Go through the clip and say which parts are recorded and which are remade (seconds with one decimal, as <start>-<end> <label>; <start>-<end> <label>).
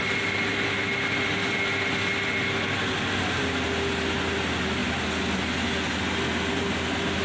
0.0-7.2 recorded